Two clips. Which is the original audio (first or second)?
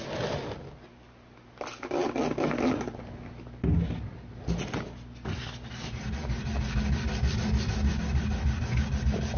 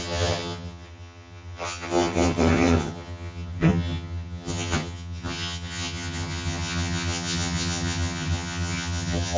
first